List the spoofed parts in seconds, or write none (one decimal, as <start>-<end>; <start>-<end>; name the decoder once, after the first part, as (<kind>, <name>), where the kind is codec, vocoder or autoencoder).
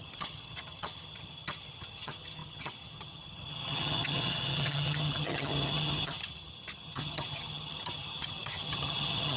0.0-9.4 (vocoder, HiFi-GAN)